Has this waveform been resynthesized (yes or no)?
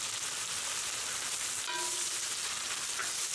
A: no